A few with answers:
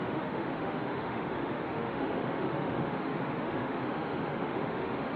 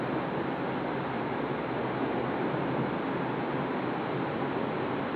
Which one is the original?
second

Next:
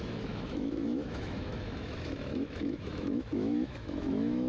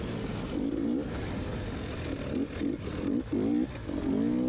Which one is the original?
second